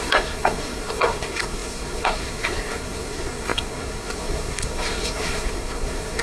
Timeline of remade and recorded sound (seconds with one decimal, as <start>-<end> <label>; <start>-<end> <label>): 0.0-6.2 remade